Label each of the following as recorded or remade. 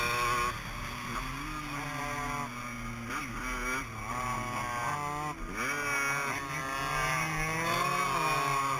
recorded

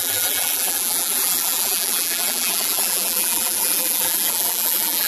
remade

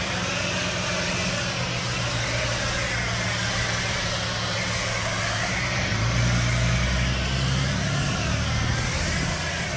recorded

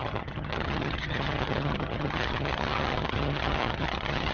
remade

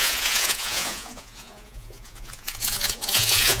remade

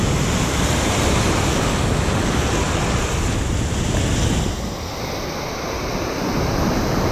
recorded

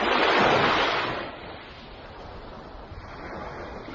recorded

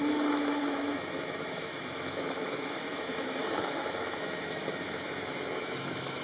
remade